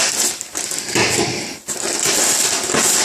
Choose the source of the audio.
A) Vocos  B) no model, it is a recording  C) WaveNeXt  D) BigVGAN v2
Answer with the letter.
B